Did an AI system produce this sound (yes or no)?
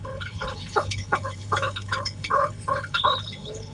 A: yes